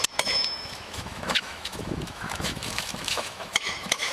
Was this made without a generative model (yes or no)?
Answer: no